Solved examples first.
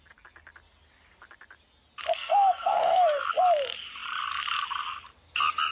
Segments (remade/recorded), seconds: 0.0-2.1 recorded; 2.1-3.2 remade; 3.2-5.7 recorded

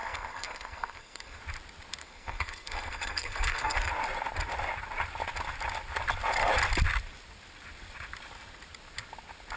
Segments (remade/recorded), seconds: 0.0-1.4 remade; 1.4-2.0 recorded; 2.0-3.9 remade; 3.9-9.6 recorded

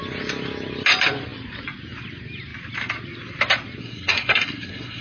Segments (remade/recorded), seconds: 0.0-3.8 recorded; 3.8-5.0 remade

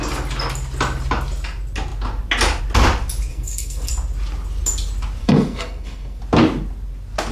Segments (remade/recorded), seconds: 0.0-3.3 recorded; 3.3-3.9 remade; 3.9-5.2 recorded; 5.2-6.2 remade; 6.2-7.3 recorded

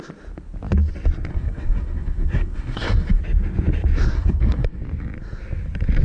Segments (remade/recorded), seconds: 0.0-1.3 recorded; 1.3-3.2 remade; 3.2-4.1 recorded; 4.1-4.8 remade; 4.8-6.0 recorded